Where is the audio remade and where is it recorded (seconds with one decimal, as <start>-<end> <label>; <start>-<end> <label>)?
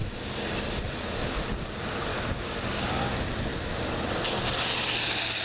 0.0-0.5 remade; 0.5-2.1 recorded; 2.1-3.1 remade; 3.1-5.4 recorded